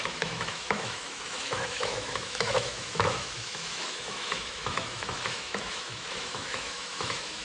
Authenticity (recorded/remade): remade